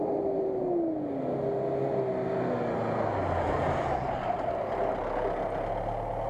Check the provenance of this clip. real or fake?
real